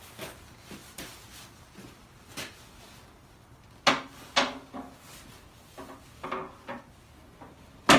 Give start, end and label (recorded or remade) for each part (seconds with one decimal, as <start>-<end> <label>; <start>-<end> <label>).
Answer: 0.0-8.0 recorded

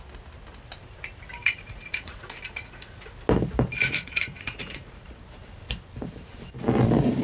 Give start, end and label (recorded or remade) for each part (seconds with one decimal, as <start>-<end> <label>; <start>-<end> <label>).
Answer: 0.0-1.4 recorded; 1.4-3.1 remade; 3.1-3.8 recorded; 3.8-5.1 remade; 5.1-7.2 recorded

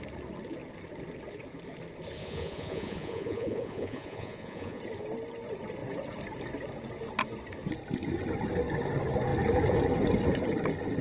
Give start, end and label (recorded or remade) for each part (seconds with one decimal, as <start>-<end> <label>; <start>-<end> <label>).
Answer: 0.0-2.2 recorded; 2.2-4.8 remade; 4.8-11.0 recorded

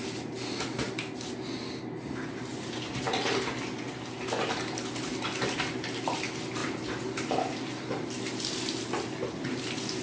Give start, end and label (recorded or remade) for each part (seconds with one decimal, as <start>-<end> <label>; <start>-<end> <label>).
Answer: 0.0-10.0 recorded